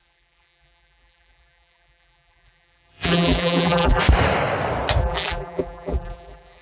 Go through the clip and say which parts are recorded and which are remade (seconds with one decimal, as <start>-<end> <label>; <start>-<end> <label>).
0.0-4.0 remade; 4.0-5.0 recorded; 5.0-6.6 remade